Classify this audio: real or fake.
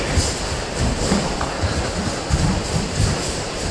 real